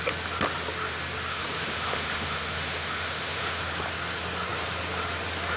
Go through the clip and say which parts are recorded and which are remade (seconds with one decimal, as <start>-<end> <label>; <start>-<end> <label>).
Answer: 0.0-1.3 recorded; 1.3-3.6 remade; 3.6-5.6 recorded